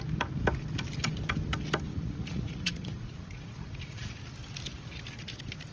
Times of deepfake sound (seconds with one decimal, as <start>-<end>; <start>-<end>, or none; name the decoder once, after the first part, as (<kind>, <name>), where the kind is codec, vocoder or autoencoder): 1.9-4.2 (vocoder, Vocos)